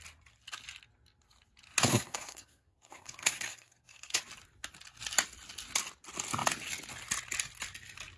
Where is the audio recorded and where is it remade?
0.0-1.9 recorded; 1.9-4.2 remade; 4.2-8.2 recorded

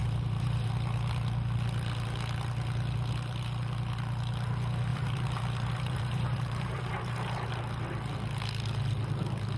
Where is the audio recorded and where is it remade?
0.0-0.7 remade; 0.7-4.9 recorded; 4.9-7.5 remade; 7.5-9.6 recorded

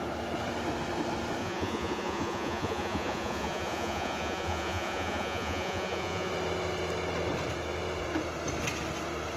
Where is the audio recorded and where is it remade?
0.0-1.4 recorded; 1.4-6.3 remade; 6.3-9.4 recorded

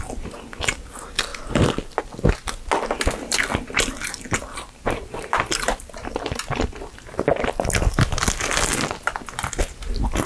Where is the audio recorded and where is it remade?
0.0-4.4 recorded; 4.4-6.2 remade; 6.2-10.3 recorded

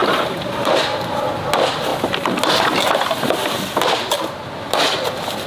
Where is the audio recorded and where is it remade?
0.0-1.2 remade; 1.2-5.5 recorded

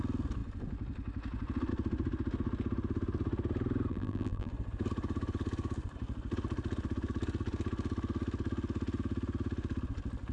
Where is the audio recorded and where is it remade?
0.0-3.9 recorded; 3.9-4.5 remade; 4.5-10.3 recorded

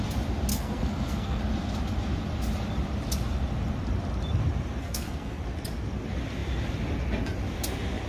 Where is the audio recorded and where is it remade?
0.0-0.5 recorded; 0.5-1.4 remade; 1.4-4.8 recorded; 4.8-5.4 remade; 5.4-8.1 recorded